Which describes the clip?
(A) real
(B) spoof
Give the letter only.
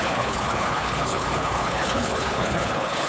B